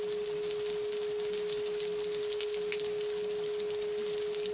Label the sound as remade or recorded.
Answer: recorded